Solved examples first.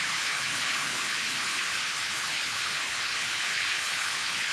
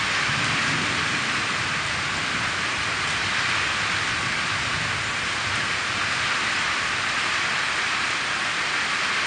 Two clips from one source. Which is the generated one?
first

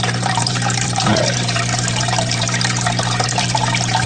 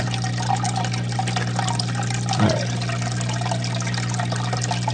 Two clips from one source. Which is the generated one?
first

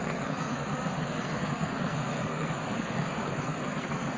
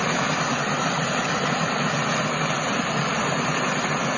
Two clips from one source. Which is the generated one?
first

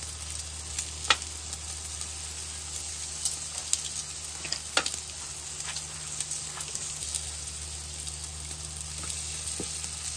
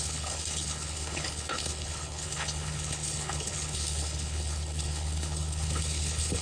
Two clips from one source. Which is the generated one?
second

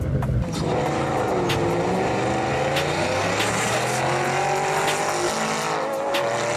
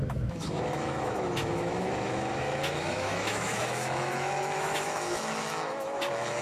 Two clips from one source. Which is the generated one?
second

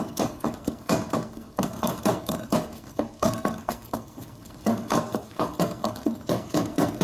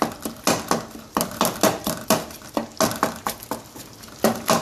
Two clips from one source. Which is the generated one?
first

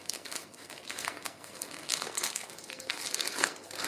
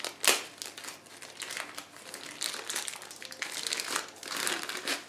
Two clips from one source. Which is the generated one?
first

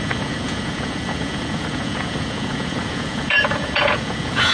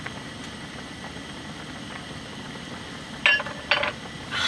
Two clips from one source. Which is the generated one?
first